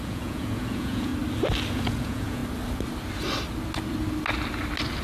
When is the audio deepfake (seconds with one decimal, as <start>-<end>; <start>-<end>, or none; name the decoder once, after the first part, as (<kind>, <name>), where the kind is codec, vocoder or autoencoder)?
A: 0.0-1.1 (vocoder, Vocos); 1.7-2.4